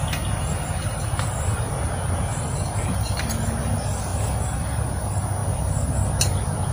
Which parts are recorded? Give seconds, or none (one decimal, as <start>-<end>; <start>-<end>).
0.0-1.5; 2.3-6.7